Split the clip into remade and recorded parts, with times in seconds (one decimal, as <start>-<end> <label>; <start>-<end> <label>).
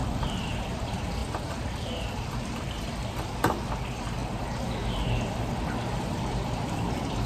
0.0-4.2 remade; 4.2-5.3 recorded; 5.3-7.3 remade